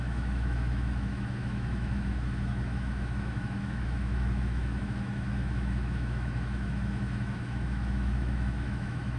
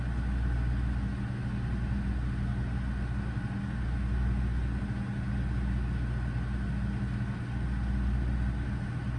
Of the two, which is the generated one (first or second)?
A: first